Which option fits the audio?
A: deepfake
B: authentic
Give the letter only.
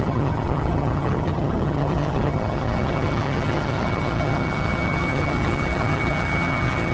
A